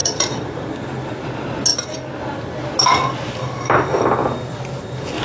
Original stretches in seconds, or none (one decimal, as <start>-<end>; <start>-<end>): 0.7-5.2